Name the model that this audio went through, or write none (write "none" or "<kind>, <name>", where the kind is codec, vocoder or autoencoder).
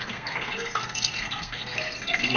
codec, SNAC